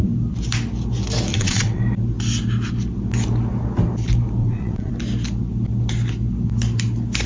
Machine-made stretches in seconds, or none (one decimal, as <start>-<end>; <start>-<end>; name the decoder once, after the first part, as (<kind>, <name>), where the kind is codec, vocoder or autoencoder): 1.3-1.8 (vocoder, WaveNeXt); 4.4-4.9